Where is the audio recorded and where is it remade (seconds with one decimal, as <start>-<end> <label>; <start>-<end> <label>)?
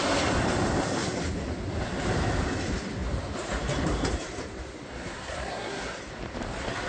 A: 0.0-4.9 recorded; 4.9-6.0 remade; 6.0-6.9 recorded